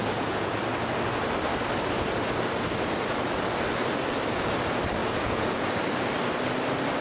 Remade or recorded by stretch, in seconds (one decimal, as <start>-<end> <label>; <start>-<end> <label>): 0.0-0.6 remade; 0.6-5.0 recorded; 5.0-5.7 remade; 5.7-7.0 recorded